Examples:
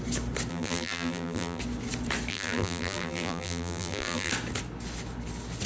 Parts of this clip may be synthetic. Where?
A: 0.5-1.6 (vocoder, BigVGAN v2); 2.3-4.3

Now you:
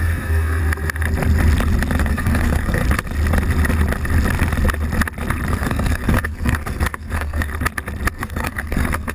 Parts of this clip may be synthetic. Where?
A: 0.0-0.6 (codec, SNAC); 2.0-2.8; 5.5-7.5; 8.1-9.1

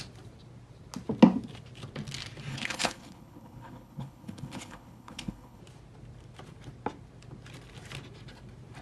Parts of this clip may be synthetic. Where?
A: 2.5-5.6 (codec, HILCodec)

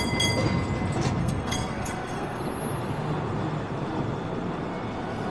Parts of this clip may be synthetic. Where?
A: 1.2-2.4 (codec, SNAC)

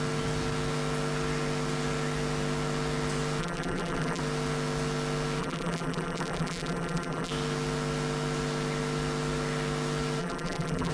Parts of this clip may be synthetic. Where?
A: 3.4-4.2 (vocoder, BigVGAN v2); 5.4-7.3; 10.2-10.9

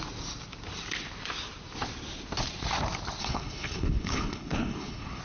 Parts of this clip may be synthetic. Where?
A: 3.2-5.2 (codec, HILCodec)